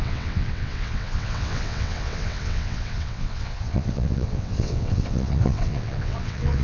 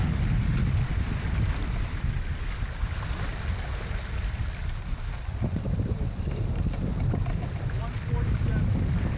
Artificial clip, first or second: first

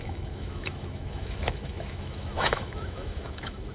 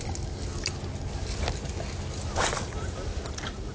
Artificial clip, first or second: first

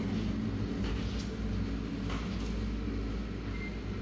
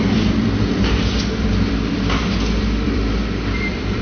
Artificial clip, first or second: second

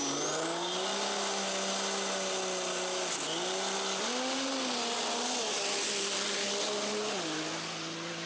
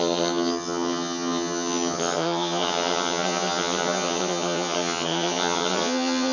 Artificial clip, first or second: second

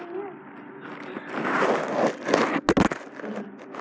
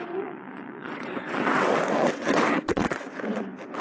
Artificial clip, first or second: second